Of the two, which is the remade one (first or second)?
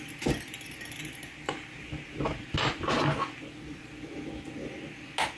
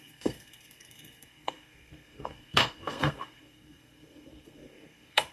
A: second